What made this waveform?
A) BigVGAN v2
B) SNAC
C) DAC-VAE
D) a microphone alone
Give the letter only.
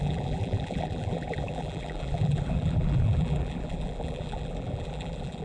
A